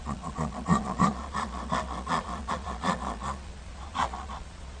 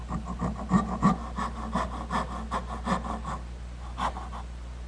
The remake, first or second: first